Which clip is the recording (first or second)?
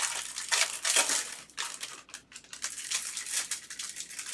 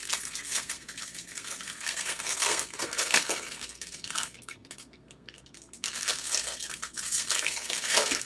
first